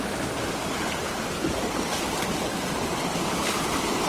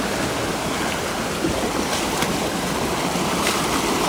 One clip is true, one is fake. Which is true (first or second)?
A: second